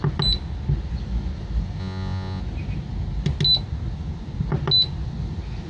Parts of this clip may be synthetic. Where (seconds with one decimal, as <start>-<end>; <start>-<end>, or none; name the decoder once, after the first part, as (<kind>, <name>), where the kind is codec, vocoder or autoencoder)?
1.8-2.4 (vocoder, Vocos)